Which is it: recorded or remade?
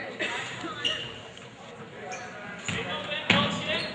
recorded